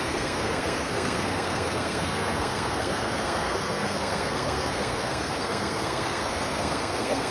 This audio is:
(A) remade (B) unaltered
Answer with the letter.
A